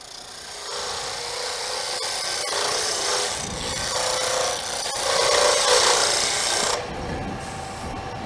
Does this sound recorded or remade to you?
recorded